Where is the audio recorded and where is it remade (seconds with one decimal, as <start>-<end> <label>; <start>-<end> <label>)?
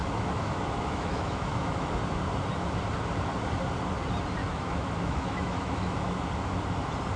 0.0-1.9 remade; 1.9-4.4 recorded; 4.4-6.1 remade; 6.1-7.2 recorded